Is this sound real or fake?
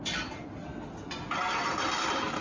real